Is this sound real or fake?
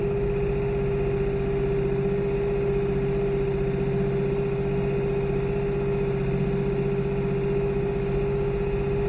real